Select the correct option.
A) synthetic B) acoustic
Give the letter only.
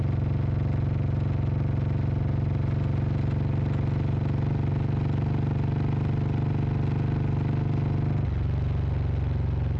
B